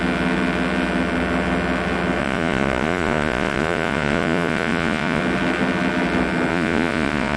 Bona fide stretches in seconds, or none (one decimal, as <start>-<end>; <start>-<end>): 0.0-2.2; 5.2-6.5